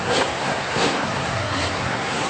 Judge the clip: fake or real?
fake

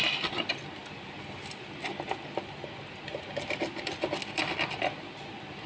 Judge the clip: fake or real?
real